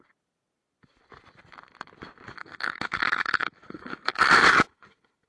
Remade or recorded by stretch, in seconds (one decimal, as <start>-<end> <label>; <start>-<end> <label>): 0.0-2.4 recorded; 2.4-4.2 remade; 4.2-5.3 recorded